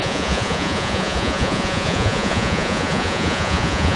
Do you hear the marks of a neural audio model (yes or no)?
yes